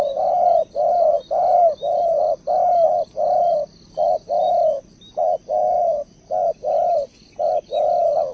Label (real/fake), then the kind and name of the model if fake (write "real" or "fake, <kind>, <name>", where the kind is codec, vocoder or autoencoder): real